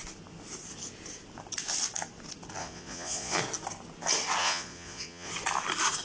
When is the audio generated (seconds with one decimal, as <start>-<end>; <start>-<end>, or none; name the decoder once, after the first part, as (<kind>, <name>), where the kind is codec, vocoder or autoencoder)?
2.6-3.4 (vocoder, Vocos); 4.4-5.3